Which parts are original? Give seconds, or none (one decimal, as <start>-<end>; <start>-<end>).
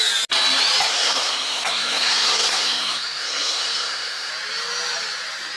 0.0-0.9; 4.3-5.6